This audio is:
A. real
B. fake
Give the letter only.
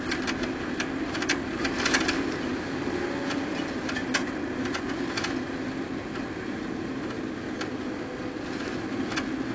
A